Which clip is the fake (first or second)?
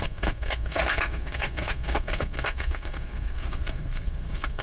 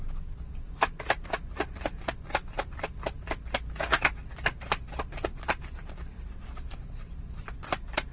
first